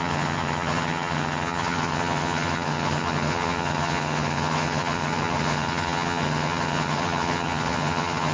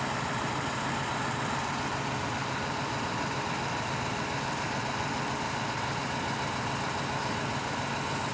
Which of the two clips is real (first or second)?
second